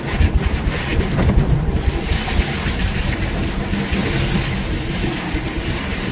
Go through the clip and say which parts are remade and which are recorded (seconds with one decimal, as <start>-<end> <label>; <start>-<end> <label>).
0.0-6.1 recorded